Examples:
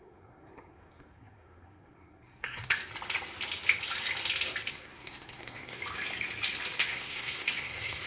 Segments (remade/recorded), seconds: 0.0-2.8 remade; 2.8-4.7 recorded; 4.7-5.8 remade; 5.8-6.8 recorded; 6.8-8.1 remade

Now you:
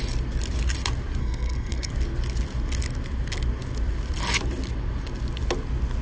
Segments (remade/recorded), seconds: 0.0-1.2 recorded; 1.2-1.9 remade; 1.9-6.0 recorded

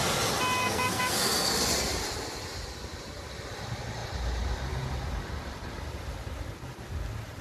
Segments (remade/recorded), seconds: 0.0-0.6 recorded; 0.6-1.5 remade; 1.5-7.4 recorded

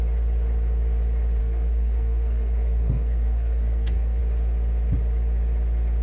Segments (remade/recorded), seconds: 0.0-1.4 recorded; 1.4-4.2 remade; 4.2-6.0 recorded

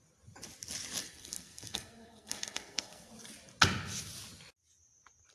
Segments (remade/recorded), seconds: 0.0-1.0 recorded; 1.0-3.1 remade; 3.1-5.3 recorded

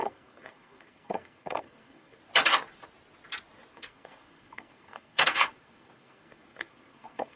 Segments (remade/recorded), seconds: 0.0-2.2 remade; 2.2-3.7 recorded; 3.7-7.4 remade